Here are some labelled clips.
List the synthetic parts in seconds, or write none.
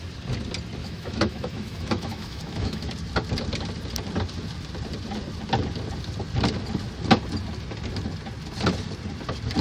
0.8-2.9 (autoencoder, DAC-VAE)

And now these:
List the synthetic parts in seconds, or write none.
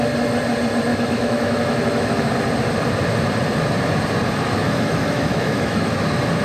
0.9-2.3 (autoencoder, DAC-VAE); 4.6-5.9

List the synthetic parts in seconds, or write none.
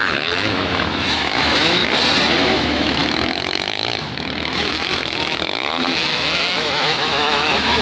0.0-1.8 (autoencoder, DAC-VAE); 2.4-7.8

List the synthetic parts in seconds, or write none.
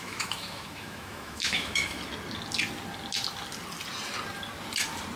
0.0-2.0 (autoencoder, DAC-VAE)